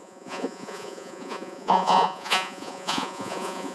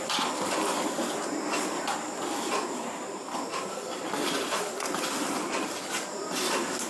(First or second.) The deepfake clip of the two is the first